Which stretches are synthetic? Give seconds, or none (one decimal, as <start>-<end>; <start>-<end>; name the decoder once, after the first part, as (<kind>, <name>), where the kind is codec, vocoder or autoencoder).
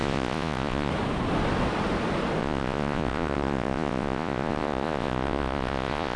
0.0-0.9 (vocoder, Vocos); 2.4-6.2